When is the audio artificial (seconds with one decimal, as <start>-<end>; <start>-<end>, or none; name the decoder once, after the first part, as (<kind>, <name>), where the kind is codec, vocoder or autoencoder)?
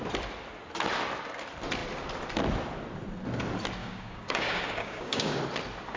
3.8-5.4 (codec, DAC)